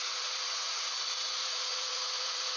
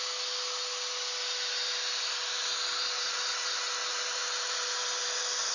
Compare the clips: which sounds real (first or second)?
second